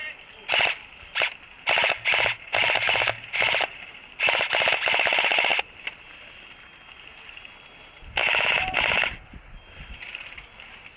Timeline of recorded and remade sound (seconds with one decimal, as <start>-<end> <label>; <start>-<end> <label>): 0.0-3.8 remade; 3.8-5.5 recorded; 5.5-6.5 remade; 6.5-11.0 recorded